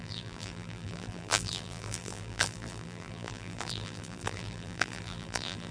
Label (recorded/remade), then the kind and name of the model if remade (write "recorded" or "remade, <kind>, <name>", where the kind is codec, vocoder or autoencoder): remade, vocoder, BigVGAN v2